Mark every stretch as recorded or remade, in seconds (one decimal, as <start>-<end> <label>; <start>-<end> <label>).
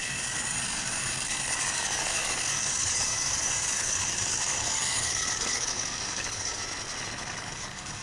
0.0-6.6 remade; 6.6-7.4 recorded; 7.4-8.0 remade